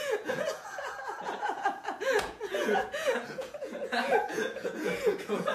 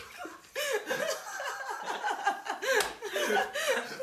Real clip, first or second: second